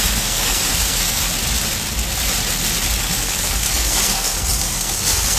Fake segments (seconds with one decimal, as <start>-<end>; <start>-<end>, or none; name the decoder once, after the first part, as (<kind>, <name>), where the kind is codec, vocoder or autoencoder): 0.0-1.2 (codec, SNAC); 3.0-5.4